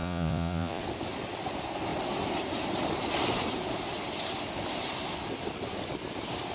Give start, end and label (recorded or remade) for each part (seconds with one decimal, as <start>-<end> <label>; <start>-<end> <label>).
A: 0.0-0.8 remade; 0.8-6.5 recorded